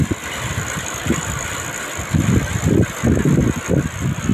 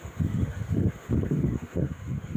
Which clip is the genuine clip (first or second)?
first